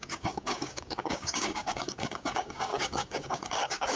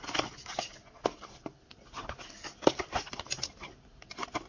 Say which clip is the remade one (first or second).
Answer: first